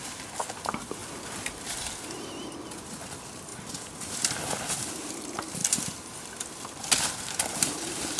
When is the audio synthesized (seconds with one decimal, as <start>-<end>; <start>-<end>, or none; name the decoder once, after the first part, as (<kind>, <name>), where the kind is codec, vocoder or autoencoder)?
1.0-1.6 (vocoder, BigVGAN v2)